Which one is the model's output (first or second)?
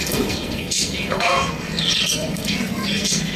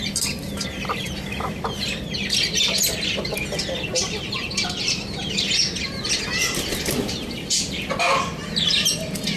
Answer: first